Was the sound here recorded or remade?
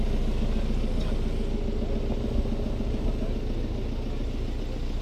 recorded